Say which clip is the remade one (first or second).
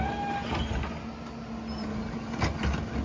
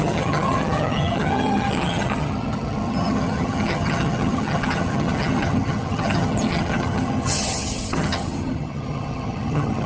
second